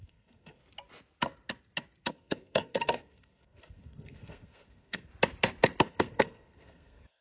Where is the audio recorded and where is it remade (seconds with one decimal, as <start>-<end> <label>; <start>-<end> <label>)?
0.0-0.6 remade; 0.6-2.1 recorded; 2.1-5.1 remade; 5.1-5.8 recorded; 5.8-7.2 remade